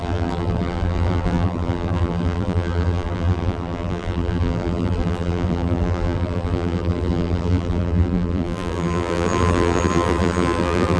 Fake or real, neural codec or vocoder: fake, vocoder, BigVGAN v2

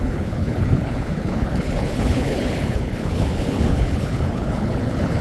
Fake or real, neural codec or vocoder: fake, codec, HILCodec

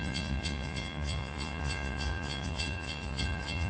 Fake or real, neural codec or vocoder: fake, vocoder, Vocos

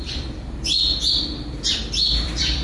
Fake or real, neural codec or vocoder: fake, vocoder, BigVGAN v2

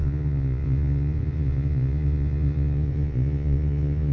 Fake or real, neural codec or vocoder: fake, vocoder, Vocos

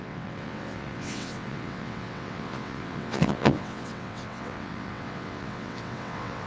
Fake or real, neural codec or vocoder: fake, vocoder, WaveNeXt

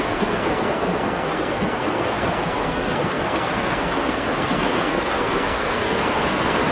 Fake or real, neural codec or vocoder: fake, codec, SNAC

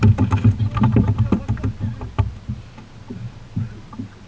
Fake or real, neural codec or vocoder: real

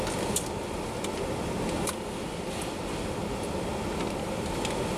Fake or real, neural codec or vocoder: real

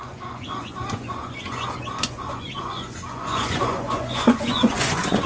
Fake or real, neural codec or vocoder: fake, vocoder, Vocos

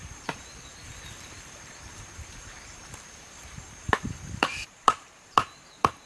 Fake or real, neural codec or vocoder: fake, vocoder, BigVGAN v2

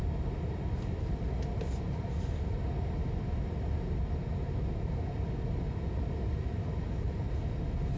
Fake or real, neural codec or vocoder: real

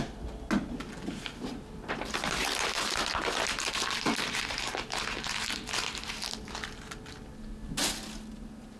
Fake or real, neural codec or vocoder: real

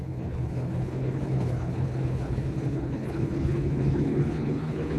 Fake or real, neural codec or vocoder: fake, codec, HILCodec